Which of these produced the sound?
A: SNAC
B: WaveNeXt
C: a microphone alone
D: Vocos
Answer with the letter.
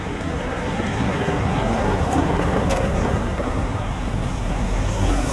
A